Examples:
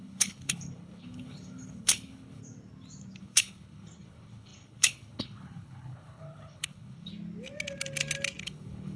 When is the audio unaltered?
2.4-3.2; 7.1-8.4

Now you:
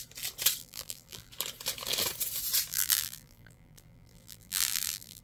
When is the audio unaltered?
0.0-0.6; 1.3-2.7